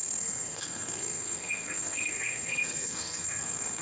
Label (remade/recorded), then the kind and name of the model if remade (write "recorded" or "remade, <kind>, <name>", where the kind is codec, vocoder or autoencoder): remade, codec, SNAC